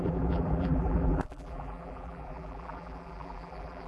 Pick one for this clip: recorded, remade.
remade